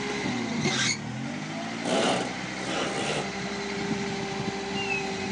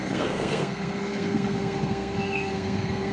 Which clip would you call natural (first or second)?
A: first